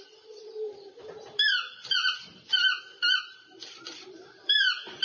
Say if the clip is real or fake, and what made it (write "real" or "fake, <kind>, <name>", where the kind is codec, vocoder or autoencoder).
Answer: fake, vocoder, BigVGAN v2